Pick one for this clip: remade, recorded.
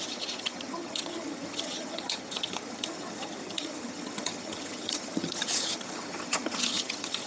remade